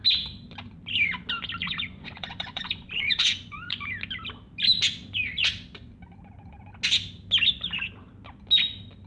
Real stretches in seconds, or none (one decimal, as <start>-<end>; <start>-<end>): 0.0-1.6; 3.9-9.1